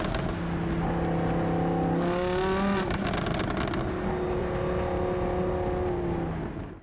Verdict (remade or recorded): recorded